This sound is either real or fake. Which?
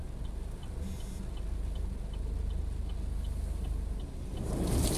real